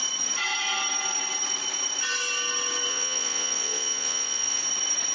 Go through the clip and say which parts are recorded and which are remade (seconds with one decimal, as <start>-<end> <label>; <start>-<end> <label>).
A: 0.0-2.9 recorded; 2.9-4.6 remade; 4.6-5.1 recorded